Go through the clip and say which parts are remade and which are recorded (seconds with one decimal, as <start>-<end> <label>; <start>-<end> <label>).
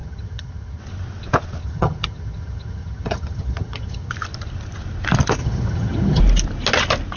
0.0-0.8 remade; 0.8-1.6 recorded; 1.6-4.1 remade; 4.1-5.4 recorded; 5.4-6.2 remade; 6.2-7.2 recorded